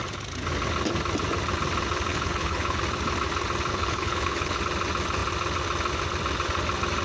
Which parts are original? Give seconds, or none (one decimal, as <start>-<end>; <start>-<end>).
0.0-2.1; 2.8-3.7; 4.6-7.0